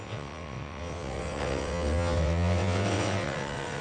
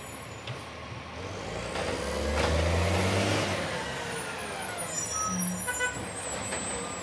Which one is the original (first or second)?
second